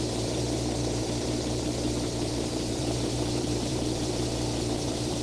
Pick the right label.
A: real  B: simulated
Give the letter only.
B